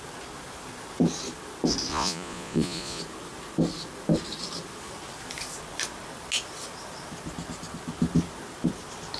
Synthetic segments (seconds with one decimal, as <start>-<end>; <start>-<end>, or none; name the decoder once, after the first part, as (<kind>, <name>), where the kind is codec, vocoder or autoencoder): 1.9-3.0 (vocoder, Vocos)